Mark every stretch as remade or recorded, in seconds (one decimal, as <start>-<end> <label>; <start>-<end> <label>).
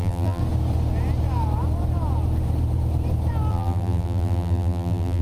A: 0.0-0.4 remade; 0.4-3.5 recorded; 3.5-5.2 remade